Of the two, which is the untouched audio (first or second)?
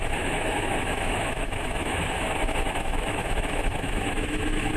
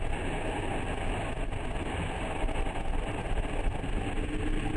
second